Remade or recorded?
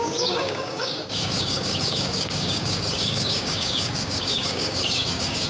remade